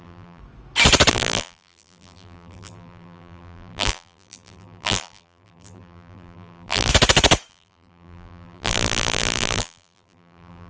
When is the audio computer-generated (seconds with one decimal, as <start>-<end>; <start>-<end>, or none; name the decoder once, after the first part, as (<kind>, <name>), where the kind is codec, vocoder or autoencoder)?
0.0-0.4 (vocoder, BigVGAN v2); 1.1-6.9; 7.5-10.7